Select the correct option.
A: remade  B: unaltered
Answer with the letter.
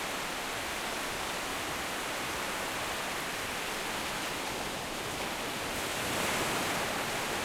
A